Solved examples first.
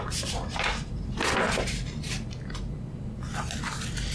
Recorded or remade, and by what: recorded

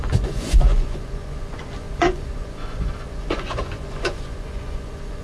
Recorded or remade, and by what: remade, vocoder, Vocos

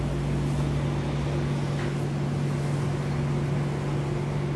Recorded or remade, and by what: recorded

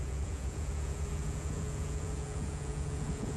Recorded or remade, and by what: remade, vocoder, Vocos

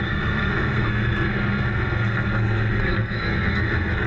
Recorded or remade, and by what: remade, codec, SNAC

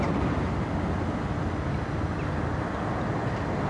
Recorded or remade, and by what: recorded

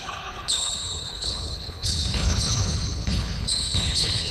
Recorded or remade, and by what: remade, codec, HILCodec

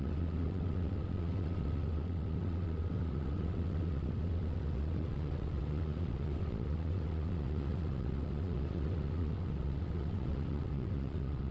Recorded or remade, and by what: remade, vocoder, WaveNeXt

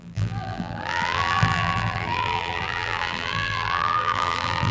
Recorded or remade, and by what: remade, vocoder, BigVGAN v2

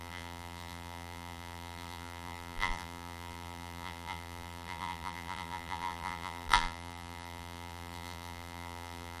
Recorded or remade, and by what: remade, vocoder, BigVGAN v2